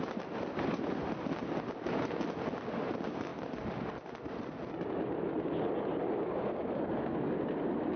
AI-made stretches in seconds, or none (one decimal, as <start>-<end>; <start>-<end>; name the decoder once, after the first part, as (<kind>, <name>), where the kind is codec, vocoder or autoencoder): none